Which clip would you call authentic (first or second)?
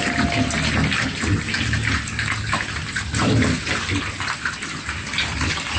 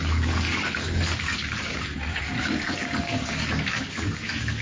first